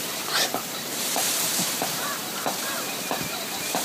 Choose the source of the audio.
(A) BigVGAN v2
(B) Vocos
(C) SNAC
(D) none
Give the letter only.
A